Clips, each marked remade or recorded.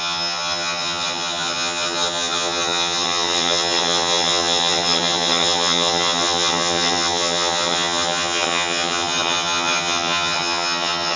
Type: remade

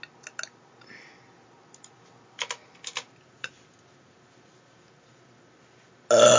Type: recorded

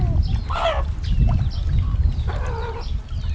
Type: recorded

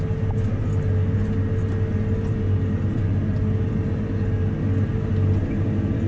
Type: recorded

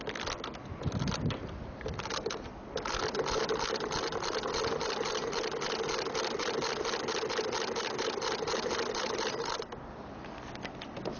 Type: recorded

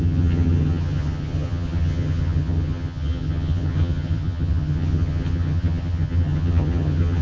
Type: remade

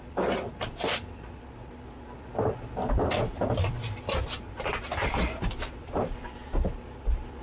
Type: recorded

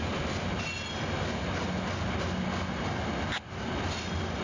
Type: recorded